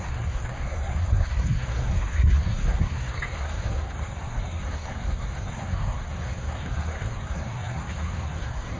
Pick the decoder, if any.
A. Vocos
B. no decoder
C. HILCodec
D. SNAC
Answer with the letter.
D